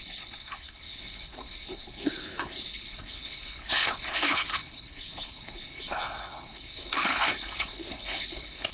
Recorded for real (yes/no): no